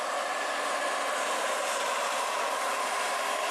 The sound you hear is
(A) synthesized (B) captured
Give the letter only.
B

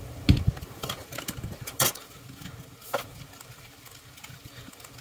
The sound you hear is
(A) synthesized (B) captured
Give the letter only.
B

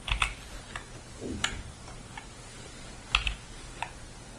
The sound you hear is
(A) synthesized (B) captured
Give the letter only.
B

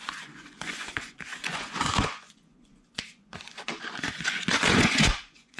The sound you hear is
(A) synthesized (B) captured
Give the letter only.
A